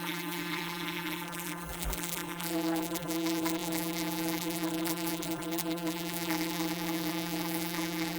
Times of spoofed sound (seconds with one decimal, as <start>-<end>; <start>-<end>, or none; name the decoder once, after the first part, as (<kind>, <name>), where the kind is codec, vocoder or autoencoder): 0.0-8.2 (vocoder, BigVGAN v2)